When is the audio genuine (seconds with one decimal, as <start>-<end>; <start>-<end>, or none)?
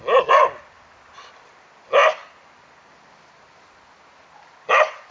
0.0-5.1